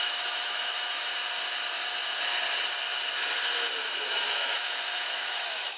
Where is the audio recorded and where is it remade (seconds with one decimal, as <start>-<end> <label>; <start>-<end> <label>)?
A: 0.0-1.1 remade; 1.1-3.8 recorded; 3.8-5.8 remade